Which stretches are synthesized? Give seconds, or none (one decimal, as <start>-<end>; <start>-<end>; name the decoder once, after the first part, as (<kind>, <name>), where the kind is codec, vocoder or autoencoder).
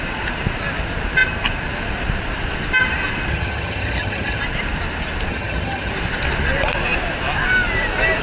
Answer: 3.3-4.4 (vocoder, HiFi-GAN); 5.3-5.9